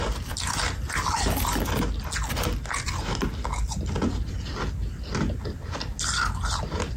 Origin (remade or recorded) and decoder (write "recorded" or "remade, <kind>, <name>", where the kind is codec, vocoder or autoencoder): recorded